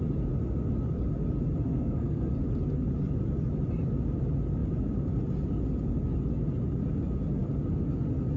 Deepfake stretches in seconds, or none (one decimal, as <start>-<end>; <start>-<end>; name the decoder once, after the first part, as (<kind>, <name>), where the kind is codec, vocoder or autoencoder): 1.7-2.4 (codec, SNAC)